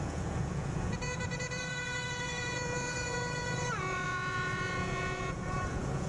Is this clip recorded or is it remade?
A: remade